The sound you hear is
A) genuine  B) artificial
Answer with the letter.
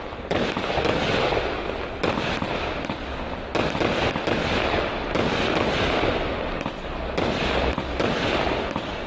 A